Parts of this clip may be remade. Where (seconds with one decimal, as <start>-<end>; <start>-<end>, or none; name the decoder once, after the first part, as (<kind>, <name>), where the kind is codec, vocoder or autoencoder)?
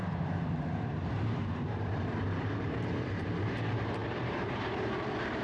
0.0-5.4 (vocoder, BigVGAN v2)